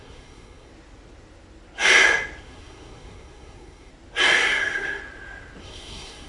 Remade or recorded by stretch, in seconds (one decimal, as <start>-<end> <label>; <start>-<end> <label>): 0.0-0.7 remade; 0.7-2.4 recorded; 2.4-3.9 remade; 3.9-4.4 recorded; 4.4-5.0 remade; 5.0-5.6 recorded; 5.6-6.3 remade